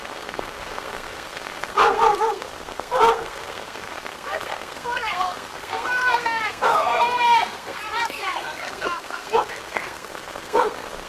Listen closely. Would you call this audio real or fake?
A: fake